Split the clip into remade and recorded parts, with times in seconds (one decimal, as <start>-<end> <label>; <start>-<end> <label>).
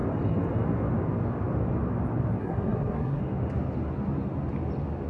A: 0.0-2.4 recorded; 2.4-3.2 remade; 3.2-5.1 recorded